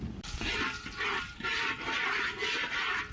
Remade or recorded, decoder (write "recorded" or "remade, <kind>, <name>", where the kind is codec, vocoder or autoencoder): recorded